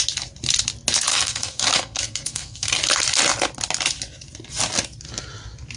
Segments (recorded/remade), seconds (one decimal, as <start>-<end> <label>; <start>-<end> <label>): 0.0-1.1 recorded; 1.1-2.8 remade; 2.8-5.8 recorded